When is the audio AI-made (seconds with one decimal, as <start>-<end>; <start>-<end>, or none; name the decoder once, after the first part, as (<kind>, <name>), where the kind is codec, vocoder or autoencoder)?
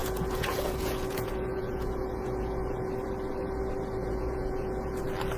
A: 0.0-2.9 (vocoder, Vocos); 4.0-5.0